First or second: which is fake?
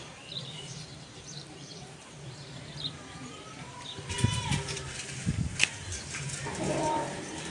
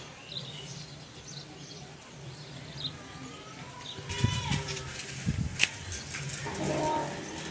first